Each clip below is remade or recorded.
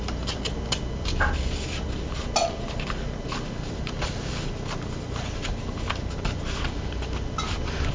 recorded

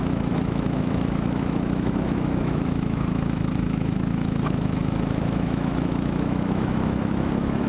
remade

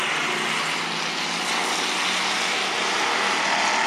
recorded